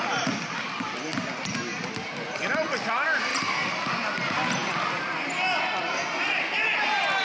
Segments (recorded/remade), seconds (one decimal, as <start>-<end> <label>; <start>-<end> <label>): 0.0-3.3 recorded; 3.3-3.9 remade; 3.9-7.2 recorded